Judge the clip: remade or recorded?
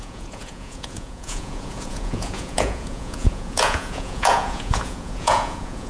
remade